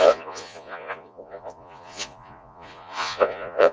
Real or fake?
fake